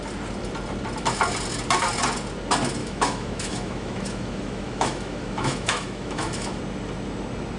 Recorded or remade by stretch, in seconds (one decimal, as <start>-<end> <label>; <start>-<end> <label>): 0.0-2.8 recorded; 2.8-6.6 remade; 6.6-7.6 recorded